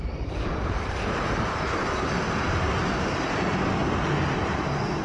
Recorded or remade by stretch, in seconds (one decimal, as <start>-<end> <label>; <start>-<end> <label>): 0.0-1.8 remade; 1.8-4.0 recorded; 4.0-5.0 remade